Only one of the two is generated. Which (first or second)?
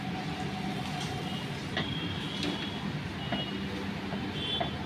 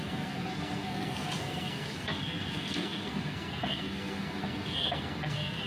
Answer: second